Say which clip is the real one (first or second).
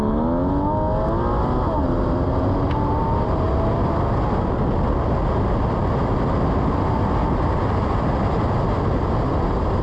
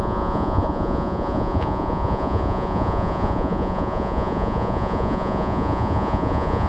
first